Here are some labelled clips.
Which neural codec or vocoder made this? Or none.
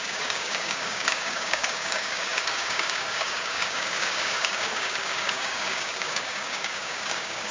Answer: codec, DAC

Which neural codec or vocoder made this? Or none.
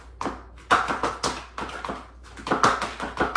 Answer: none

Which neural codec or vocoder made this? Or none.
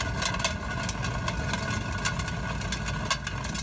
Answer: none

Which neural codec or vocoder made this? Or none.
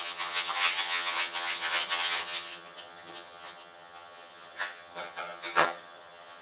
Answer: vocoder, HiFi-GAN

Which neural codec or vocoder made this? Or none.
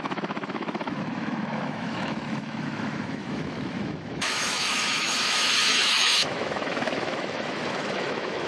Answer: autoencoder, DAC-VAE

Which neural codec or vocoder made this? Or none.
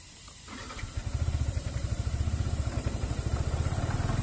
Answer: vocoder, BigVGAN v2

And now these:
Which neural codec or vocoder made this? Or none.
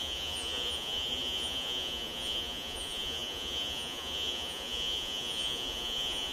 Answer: vocoder, Vocos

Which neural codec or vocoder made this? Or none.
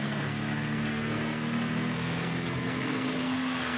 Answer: codec, SNAC